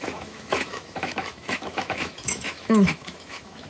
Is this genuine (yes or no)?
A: no